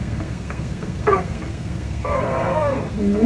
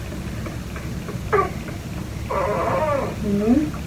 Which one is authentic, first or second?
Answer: second